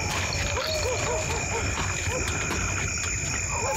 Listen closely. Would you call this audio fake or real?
real